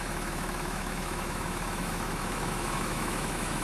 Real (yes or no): no